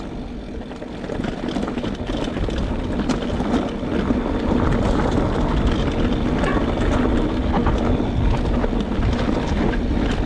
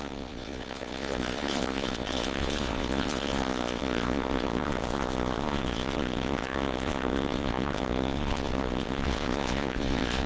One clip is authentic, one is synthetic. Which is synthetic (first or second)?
second